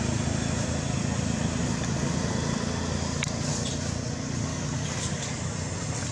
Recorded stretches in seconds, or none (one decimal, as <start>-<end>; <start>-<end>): 0.0-4.5; 5.4-6.1